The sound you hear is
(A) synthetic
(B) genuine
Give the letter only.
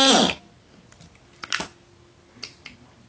B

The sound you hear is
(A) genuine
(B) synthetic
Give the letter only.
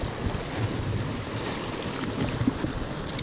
B